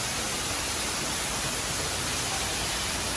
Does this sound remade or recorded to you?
recorded